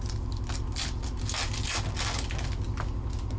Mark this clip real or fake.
real